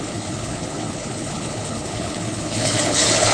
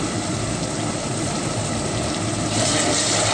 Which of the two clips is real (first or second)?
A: second